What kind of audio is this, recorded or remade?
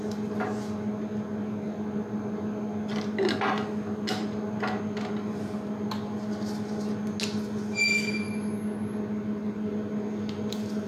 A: recorded